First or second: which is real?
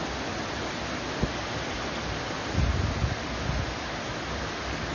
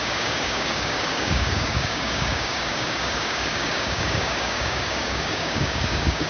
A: first